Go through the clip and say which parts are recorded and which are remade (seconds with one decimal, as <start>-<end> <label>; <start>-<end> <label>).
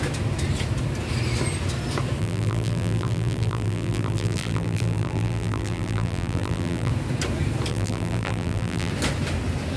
0.0-2.2 recorded; 2.2-6.9 remade; 6.9-7.7 recorded; 7.7-8.9 remade; 8.9-9.8 recorded